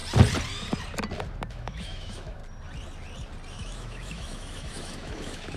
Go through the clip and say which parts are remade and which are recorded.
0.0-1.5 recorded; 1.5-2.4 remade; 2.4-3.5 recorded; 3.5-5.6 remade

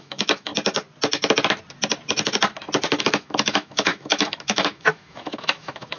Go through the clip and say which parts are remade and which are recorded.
0.0-0.5 remade; 0.5-3.0 recorded; 3.0-6.0 remade